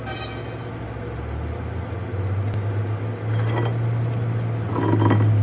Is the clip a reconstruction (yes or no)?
no